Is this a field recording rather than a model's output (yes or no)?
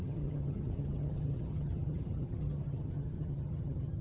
no